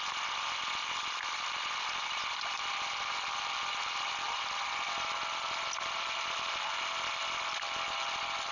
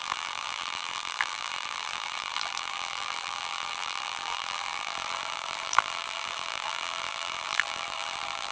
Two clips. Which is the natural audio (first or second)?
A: first